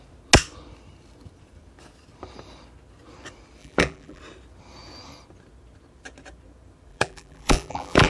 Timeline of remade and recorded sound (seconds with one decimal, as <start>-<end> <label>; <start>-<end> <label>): 0.0-3.6 recorded; 3.6-4.2 remade; 4.2-6.9 recorded; 6.9-8.1 remade